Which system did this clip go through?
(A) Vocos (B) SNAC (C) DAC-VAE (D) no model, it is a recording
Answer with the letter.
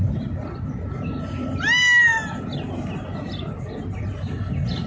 D